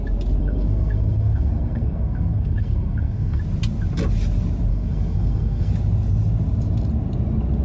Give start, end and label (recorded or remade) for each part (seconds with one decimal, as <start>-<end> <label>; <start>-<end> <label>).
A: 0.0-0.4 recorded; 0.4-3.4 remade; 3.4-4.7 recorded; 4.7-5.7 remade; 5.7-7.6 recorded